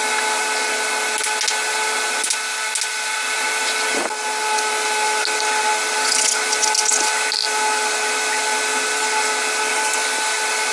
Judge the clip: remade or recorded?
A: recorded